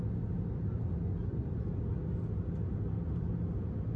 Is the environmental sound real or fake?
real